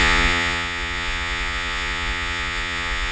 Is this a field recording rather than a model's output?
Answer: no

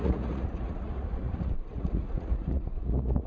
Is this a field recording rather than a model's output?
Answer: no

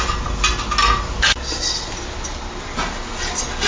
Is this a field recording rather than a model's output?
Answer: yes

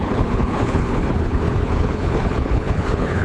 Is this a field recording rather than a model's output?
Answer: no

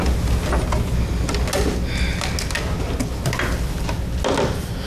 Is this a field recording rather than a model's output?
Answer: yes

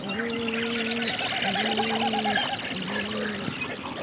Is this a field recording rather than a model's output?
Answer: yes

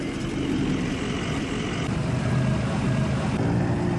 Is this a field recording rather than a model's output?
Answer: no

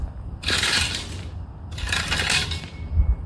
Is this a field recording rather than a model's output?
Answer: no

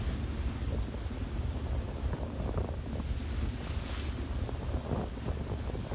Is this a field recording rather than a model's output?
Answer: yes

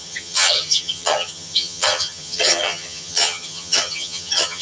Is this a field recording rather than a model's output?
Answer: no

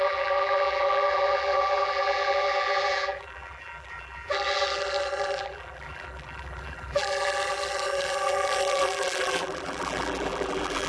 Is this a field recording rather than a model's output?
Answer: no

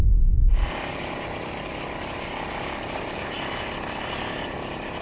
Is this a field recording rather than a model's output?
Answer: yes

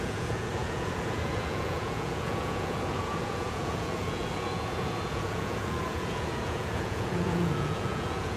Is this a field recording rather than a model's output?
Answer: no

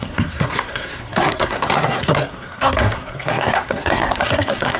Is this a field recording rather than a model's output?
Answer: no